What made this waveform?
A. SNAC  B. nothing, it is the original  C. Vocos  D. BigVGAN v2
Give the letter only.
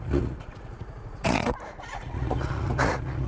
C